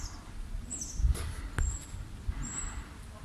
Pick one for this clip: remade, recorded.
recorded